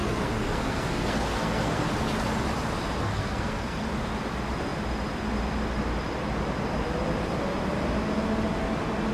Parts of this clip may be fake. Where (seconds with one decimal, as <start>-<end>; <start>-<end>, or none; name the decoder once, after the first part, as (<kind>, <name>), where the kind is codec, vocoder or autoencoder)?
0.0-1.9 (codec, SNAC); 3.0-3.9